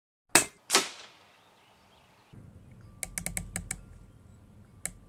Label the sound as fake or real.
real